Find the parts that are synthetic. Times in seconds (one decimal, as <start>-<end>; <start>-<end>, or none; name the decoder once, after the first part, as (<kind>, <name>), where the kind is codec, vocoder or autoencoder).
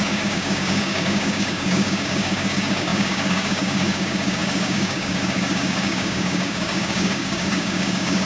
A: 0.0-8.3 (codec, DAC)